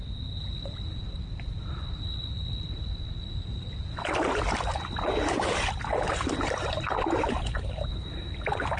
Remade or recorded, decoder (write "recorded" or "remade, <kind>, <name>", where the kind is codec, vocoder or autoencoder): remade, vocoder, BigVGAN v2